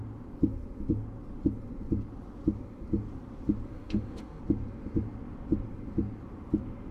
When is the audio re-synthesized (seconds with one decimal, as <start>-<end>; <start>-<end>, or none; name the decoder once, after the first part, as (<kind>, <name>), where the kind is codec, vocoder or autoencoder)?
3.7-4.4 (autoencoder, DAC-VAE)